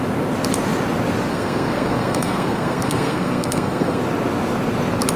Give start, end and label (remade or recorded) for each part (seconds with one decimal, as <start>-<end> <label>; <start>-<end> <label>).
0.0-1.3 recorded; 1.3-4.0 remade; 4.0-5.2 recorded